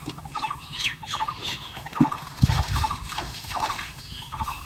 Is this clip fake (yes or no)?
yes